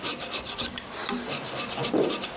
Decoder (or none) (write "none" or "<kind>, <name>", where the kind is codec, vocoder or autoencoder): none